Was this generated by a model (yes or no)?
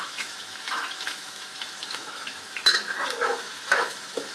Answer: yes